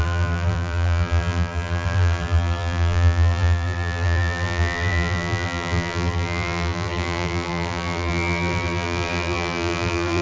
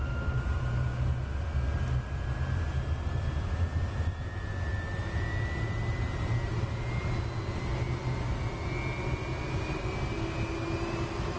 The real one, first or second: second